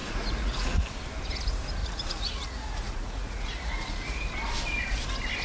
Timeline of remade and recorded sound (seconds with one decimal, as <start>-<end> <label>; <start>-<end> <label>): 0.0-0.8 remade; 0.8-1.8 recorded; 1.8-4.2 remade; 4.2-5.4 recorded